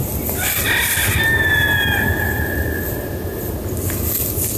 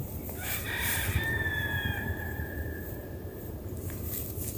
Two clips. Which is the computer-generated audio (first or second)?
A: second